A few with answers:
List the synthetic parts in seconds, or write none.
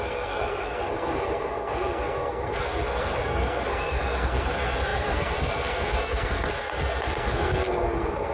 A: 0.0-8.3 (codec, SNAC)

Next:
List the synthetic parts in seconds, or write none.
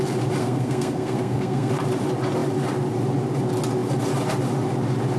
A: 0.4-1.7 (codec, SNAC)